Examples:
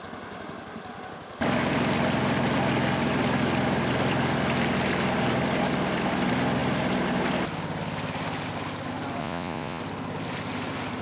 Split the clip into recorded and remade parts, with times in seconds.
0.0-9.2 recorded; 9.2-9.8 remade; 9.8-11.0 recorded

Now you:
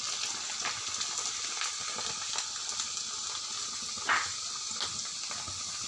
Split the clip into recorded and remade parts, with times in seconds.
0.0-5.9 recorded

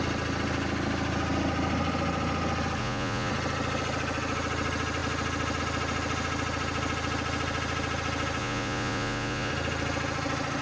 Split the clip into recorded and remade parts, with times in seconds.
0.0-2.8 recorded; 2.8-3.3 remade; 3.3-8.4 recorded; 8.4-9.5 remade; 9.5-10.6 recorded